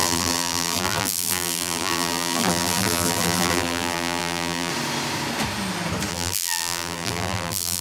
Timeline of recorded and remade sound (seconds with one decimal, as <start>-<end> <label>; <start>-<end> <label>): 0.0-4.7 remade; 4.7-6.1 recorded; 6.1-7.8 remade